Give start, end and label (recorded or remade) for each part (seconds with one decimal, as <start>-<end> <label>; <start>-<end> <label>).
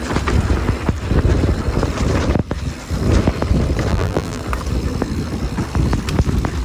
0.0-3.9 recorded; 3.9-4.4 remade; 4.4-6.6 recorded